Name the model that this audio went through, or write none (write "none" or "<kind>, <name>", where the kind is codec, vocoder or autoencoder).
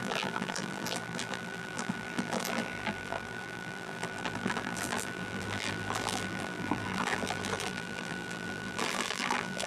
vocoder, BigVGAN v2